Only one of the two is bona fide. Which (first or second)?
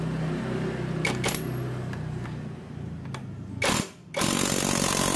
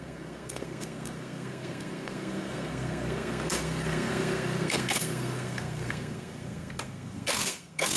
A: first